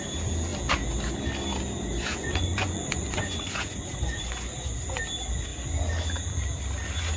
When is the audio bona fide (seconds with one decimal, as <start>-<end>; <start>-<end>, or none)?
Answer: 0.0-2.1; 5.0-7.2